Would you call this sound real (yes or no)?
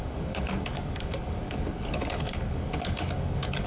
no